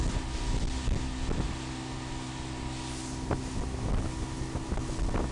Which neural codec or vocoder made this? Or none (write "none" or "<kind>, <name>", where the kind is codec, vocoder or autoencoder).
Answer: none